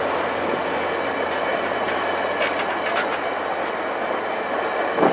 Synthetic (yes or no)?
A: no